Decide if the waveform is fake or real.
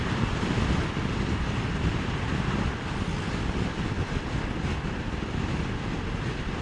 real